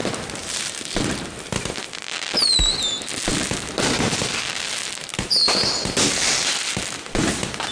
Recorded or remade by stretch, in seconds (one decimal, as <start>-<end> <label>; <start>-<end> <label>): 0.0-7.7 recorded